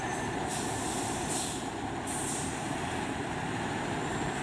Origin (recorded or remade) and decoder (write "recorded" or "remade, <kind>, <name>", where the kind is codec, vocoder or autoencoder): remade, vocoder, BigVGAN v2